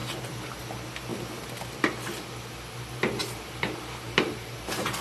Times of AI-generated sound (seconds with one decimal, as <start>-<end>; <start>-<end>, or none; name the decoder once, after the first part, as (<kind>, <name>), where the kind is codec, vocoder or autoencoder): 0.0-0.6 (vocoder, BigVGAN v2); 3.2-5.0